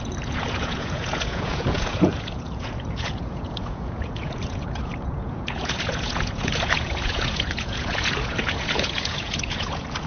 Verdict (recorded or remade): remade